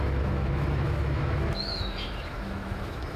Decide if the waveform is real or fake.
fake